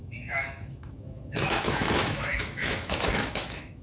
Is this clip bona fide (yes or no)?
no